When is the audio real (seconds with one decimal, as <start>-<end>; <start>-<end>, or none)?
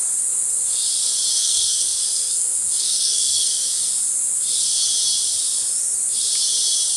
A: 0.0-1.4; 3.9-7.0